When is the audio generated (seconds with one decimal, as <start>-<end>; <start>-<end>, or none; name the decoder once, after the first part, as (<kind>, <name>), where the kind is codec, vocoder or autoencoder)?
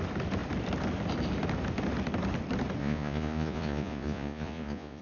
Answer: 2.8-5.0 (vocoder, Vocos)